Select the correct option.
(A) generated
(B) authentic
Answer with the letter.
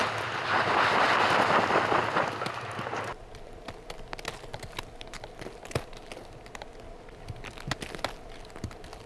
B